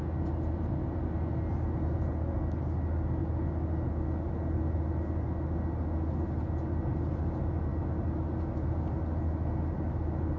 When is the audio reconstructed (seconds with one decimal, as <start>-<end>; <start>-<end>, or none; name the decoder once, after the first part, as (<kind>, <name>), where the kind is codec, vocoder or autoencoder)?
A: none